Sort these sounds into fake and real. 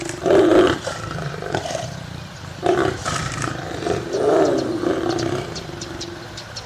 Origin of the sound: fake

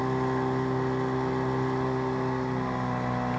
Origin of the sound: real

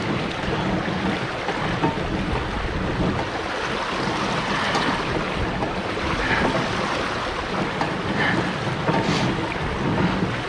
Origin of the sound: real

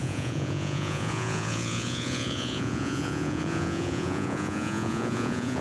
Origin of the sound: fake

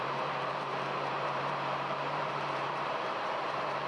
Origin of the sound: fake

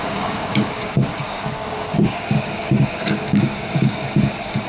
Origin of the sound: fake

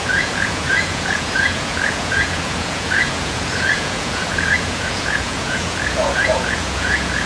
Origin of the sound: fake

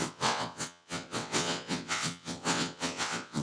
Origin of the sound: fake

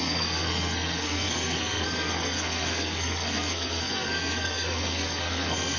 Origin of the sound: fake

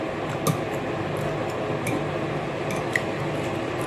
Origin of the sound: real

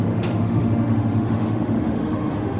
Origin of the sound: fake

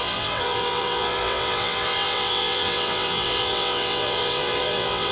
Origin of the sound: fake